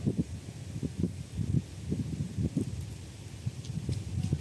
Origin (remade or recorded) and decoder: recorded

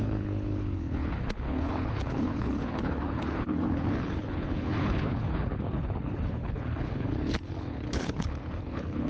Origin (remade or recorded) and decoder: remade, codec, HILCodec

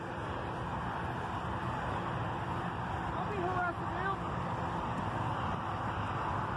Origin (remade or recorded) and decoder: recorded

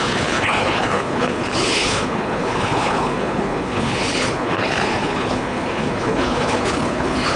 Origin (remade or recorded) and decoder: remade, codec, HILCodec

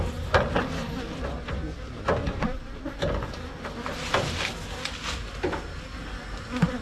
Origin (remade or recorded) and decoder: recorded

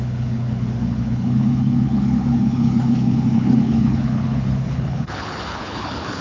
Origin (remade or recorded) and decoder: remade, codec, HILCodec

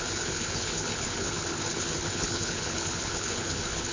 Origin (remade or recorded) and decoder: remade, codec, HILCodec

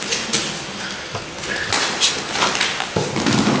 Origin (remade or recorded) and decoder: recorded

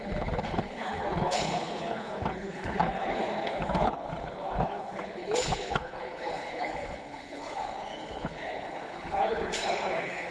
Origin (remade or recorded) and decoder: remade, codec, HILCodec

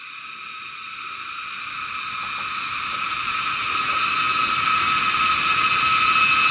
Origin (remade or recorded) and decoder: recorded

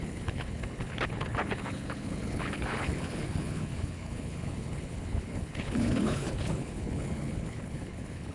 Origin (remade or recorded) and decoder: remade, codec, HILCodec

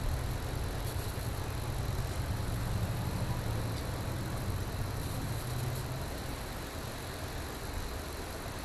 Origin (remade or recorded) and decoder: recorded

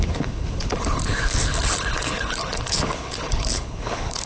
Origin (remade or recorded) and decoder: remade, codec, HILCodec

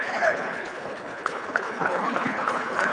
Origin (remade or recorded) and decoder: remade, codec, HILCodec